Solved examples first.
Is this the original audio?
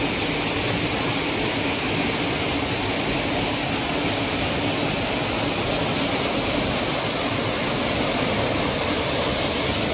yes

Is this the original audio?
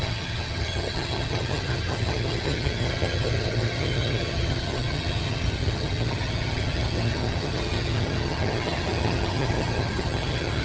no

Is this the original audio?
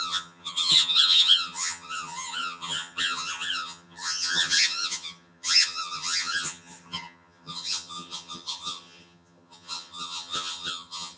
no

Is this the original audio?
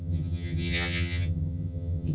no